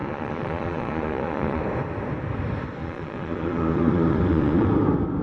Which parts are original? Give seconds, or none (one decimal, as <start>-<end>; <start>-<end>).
1.6-2.8; 4.7-5.2